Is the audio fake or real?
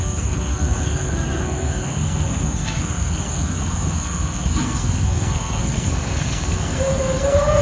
fake